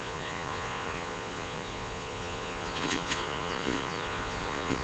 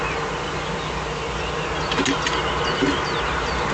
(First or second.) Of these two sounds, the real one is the second